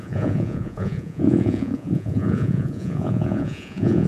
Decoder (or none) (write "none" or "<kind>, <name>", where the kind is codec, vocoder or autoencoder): vocoder, Vocos